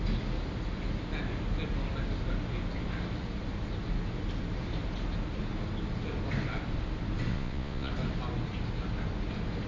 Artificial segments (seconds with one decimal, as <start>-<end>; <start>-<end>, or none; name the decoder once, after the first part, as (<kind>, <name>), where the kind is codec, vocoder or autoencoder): 7.3-7.9 (vocoder, Vocos)